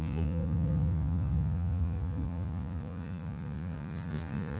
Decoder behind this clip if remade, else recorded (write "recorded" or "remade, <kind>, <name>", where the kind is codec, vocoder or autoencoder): remade, vocoder, Vocos